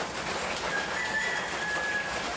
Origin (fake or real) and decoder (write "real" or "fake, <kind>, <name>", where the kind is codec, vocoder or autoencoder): real